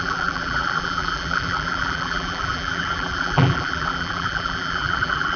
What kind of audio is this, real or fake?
fake